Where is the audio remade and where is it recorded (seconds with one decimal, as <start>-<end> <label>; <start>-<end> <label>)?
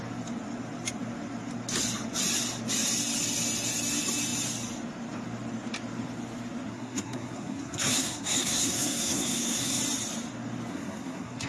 0.0-6.7 recorded; 6.7-9.8 remade; 9.8-10.7 recorded; 10.7-11.5 remade